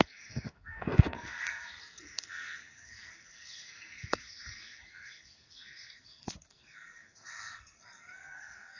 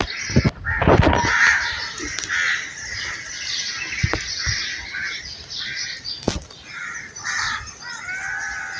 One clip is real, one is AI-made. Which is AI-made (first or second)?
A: first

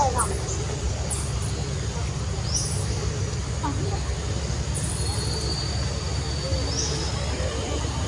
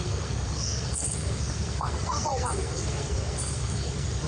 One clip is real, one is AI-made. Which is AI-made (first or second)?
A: second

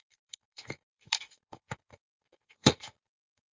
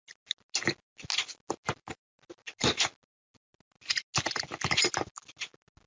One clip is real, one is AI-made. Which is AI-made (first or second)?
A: first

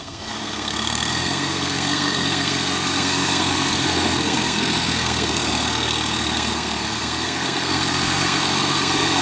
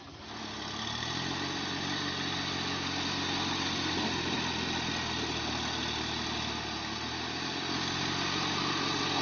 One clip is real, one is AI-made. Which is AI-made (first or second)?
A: first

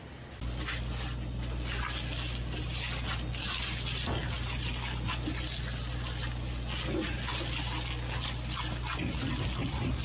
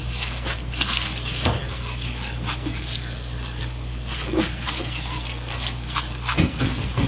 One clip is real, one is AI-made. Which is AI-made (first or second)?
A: second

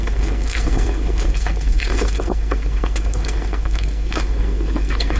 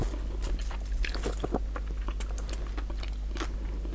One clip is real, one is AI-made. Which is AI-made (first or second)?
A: first